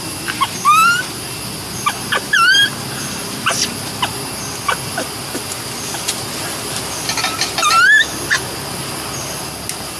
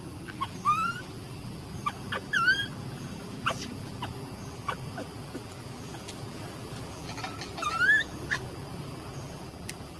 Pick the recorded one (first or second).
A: first